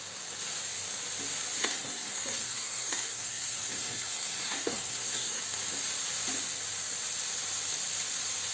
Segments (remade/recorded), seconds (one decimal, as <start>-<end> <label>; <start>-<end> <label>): 0.0-1.6 recorded; 1.6-5.4 remade; 5.4-8.5 recorded